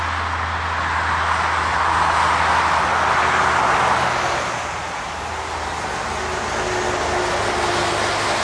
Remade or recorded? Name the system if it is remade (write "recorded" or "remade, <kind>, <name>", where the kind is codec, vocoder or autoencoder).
recorded